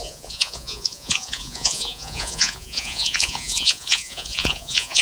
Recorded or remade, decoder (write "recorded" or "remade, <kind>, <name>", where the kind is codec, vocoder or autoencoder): remade, vocoder, Vocos